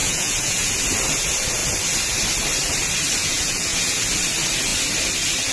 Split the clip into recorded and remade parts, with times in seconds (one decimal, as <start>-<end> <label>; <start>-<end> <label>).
0.0-0.7 remade; 0.7-3.2 recorded; 3.2-4.0 remade; 4.0-5.5 recorded